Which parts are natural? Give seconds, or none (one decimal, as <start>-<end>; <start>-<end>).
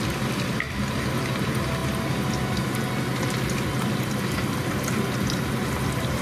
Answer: 0.0-6.2